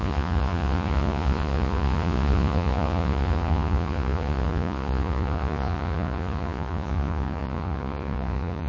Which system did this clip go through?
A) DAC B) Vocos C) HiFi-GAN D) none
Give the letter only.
B